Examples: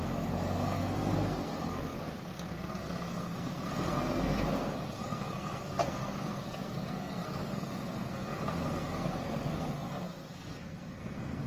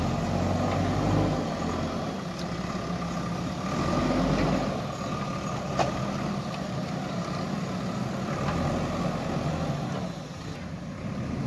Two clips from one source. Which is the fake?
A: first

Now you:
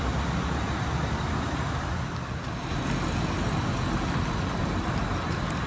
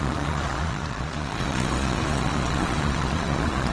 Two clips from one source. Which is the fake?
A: second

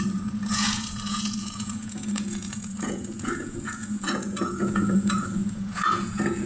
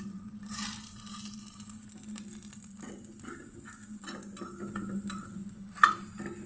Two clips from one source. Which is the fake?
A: first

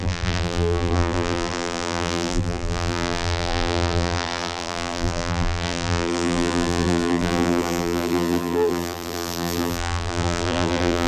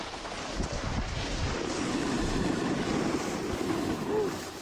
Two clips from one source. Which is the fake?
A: first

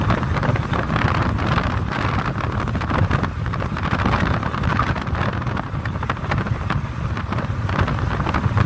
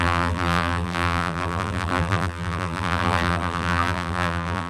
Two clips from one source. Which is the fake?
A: second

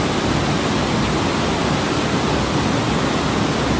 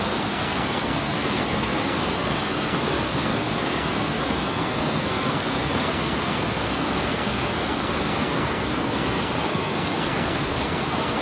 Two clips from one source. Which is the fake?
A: second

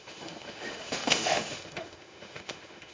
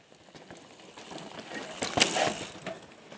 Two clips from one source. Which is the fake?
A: first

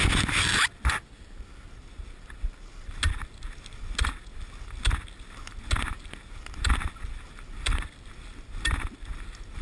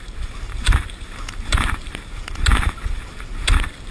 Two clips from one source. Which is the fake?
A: second